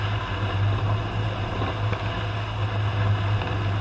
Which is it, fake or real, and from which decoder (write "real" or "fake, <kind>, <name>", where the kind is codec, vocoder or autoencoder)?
real